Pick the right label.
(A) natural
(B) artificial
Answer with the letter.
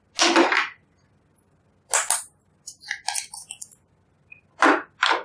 A